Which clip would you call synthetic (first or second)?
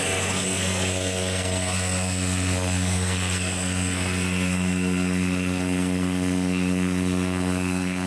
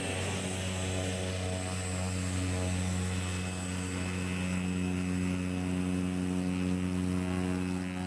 first